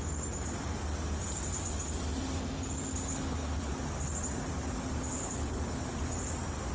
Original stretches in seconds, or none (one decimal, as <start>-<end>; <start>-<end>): 0.0-3.1; 3.7-5.1; 5.8-6.7